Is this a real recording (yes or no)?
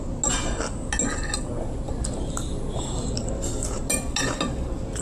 yes